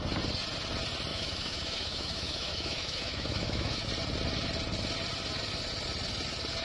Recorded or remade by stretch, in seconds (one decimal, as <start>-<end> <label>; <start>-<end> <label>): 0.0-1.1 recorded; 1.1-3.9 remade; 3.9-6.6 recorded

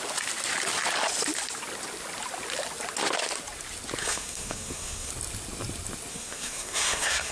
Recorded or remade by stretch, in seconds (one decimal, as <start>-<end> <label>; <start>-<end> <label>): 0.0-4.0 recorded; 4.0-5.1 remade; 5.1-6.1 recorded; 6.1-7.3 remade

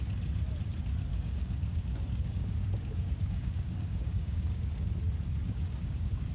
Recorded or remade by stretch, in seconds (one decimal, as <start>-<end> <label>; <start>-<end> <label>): 0.0-1.1 recorded; 1.1-4.9 remade; 4.9-5.4 recorded; 5.4-6.3 remade